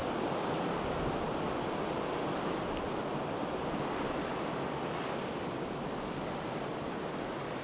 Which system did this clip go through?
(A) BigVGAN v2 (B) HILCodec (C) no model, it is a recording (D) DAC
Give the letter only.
C